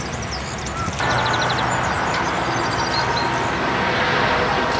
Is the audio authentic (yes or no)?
yes